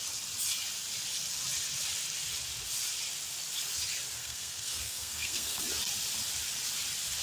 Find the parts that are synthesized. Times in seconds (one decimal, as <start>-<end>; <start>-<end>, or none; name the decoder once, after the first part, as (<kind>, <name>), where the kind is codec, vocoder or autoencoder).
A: 4.2-5.6 (codec, SNAC)

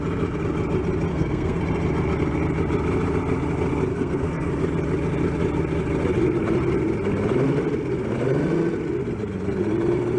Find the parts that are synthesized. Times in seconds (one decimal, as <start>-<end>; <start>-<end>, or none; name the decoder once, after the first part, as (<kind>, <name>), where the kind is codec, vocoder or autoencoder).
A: 1.1-1.6 (codec, SNAC); 3.9-4.5

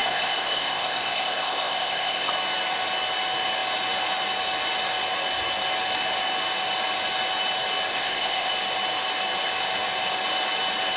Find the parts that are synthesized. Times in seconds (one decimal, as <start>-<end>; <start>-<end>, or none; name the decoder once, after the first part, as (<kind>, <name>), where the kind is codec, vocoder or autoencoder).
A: 0.0-2.3 (codec, ZipCodec); 7.9-8.5

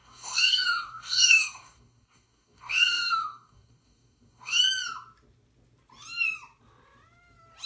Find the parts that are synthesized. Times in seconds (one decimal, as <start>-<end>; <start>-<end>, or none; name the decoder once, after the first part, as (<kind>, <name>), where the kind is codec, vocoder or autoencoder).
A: 0.0-4.6 (codec, DAC)